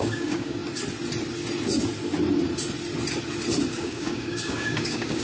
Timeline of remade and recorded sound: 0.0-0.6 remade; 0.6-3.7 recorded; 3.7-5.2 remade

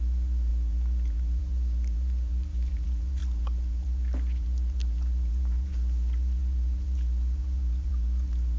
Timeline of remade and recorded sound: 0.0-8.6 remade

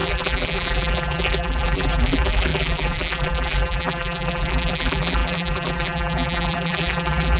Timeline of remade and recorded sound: 0.0-7.4 remade

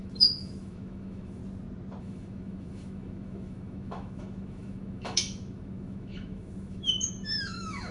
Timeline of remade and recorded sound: 0.0-1.4 remade; 1.4-2.0 recorded; 2.0-7.9 remade

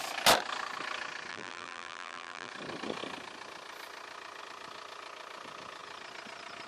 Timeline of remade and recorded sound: 0.0-1.3 recorded; 1.3-2.5 remade; 2.5-6.7 recorded

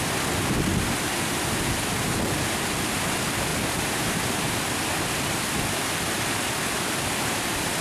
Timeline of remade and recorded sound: 0.0-7.8 recorded

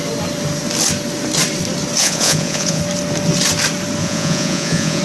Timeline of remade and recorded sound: 0.0-2.0 recorded; 2.0-2.8 remade; 2.8-4.0 recorded; 4.0-5.0 remade